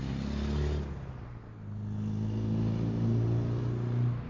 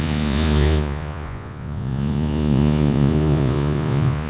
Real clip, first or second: first